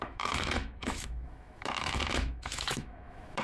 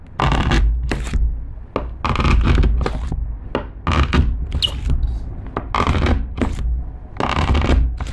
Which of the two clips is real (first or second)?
second